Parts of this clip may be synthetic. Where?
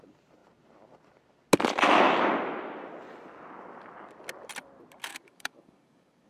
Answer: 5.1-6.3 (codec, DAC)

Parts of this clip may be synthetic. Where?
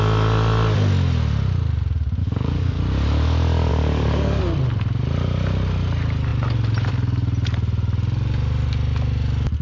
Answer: 2.2-2.8 (codec, DAC); 3.7-4.4